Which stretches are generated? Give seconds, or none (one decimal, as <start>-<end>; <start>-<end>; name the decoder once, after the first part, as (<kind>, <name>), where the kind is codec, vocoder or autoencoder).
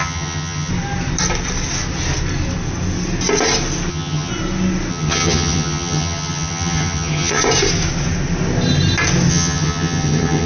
0.0-0.7 (vocoder, HiFi-GAN); 3.9-4.3; 4.9-7.4; 9.3-10.5